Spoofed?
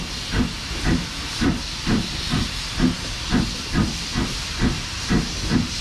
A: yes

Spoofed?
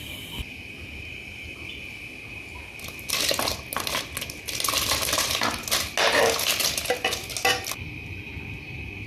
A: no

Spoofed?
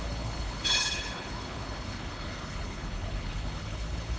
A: yes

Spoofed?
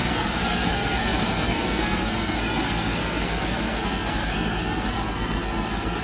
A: yes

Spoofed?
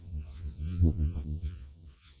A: yes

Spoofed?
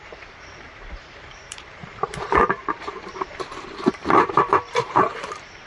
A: yes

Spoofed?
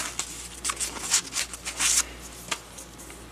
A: no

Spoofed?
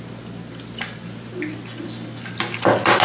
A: no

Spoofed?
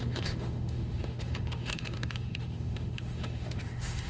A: yes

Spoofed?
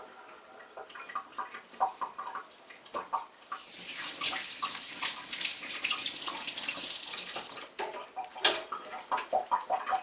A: no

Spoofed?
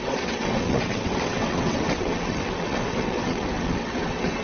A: yes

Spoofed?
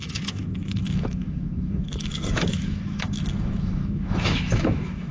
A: yes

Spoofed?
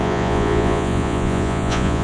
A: yes